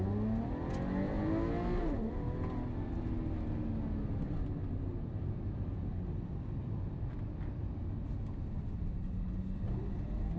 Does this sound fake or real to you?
real